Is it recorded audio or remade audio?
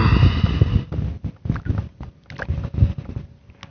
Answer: recorded